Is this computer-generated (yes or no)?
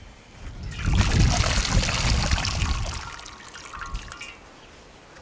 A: no